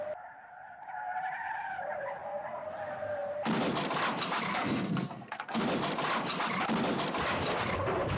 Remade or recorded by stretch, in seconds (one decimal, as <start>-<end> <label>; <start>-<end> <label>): 0.0-4.5 recorded; 4.5-5.6 remade; 5.6-8.2 recorded